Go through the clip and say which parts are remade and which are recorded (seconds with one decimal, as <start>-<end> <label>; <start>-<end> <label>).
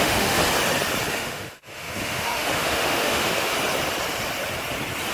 0.0-0.4 remade; 0.4-1.1 recorded; 1.1-3.5 remade; 3.5-5.1 recorded